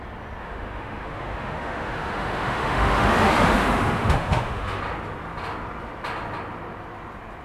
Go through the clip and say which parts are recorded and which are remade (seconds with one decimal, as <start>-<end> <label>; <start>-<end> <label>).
0.0-0.4 recorded; 0.4-4.8 remade; 4.8-7.4 recorded